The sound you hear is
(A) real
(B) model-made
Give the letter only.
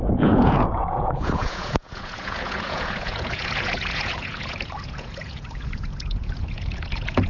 B